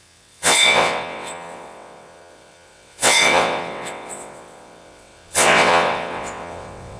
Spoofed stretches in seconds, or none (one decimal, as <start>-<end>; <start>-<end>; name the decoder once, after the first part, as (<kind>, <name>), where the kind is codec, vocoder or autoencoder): 0.0-7.0 (vocoder, WaveNeXt)